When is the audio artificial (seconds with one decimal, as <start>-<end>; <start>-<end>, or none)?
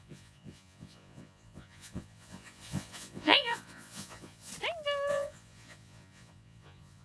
0.0-4.5; 5.1-7.0